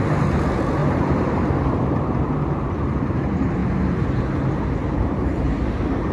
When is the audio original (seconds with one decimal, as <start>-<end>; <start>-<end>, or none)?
0.0-0.8; 3.2-3.6; 4.2-4.8